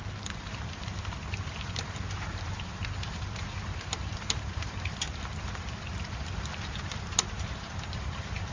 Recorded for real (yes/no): no